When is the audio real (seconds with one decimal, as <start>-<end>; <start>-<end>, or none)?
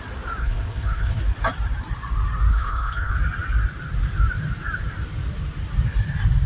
0.0-0.4; 1.2-2.5; 3.1-6.5